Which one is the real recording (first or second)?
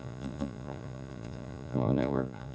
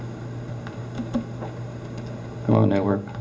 second